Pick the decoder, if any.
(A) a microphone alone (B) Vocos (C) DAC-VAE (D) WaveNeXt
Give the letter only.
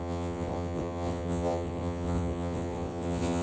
D